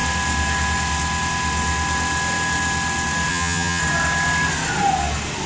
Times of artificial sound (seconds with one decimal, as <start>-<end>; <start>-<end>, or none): 3.3-3.8